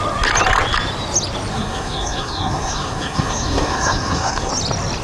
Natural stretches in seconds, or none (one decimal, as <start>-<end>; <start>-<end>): 0.0-1.5; 4.5-5.0